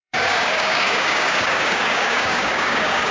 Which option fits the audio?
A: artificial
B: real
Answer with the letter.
A